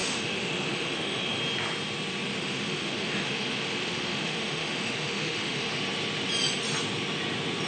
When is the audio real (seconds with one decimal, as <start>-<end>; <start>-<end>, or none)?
1.4-2.3; 5.8-7.7

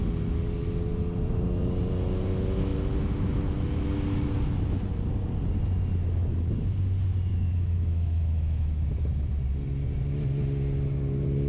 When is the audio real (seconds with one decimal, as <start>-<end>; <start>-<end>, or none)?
0.0-7.3; 8.9-11.5

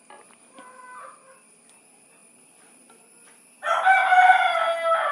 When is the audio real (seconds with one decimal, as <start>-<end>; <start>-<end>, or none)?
0.0-5.1

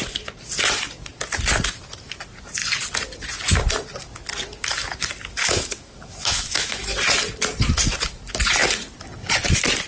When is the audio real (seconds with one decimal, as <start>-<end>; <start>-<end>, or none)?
0.0-5.4; 6.8-9.9

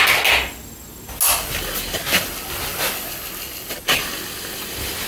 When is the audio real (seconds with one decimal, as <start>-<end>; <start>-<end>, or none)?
0.0-5.1

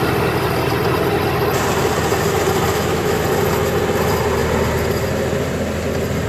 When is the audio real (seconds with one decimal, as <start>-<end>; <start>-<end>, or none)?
0.0-2.7; 3.2-6.3